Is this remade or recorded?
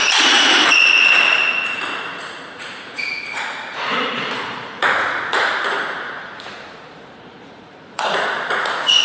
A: remade